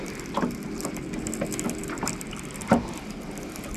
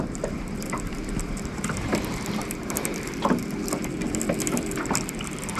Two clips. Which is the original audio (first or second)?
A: first